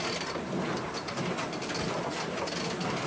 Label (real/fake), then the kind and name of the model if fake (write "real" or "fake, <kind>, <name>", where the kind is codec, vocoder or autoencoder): real